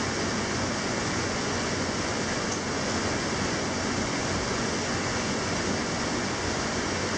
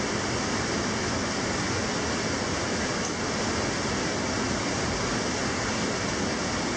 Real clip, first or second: second